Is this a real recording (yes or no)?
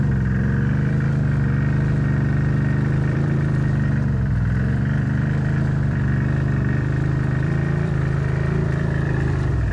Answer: no